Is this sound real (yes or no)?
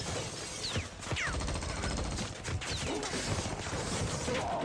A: yes